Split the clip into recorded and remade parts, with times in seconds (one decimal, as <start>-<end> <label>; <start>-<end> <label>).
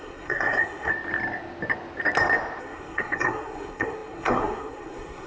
0.0-0.9 remade; 0.9-2.6 recorded; 2.6-5.3 remade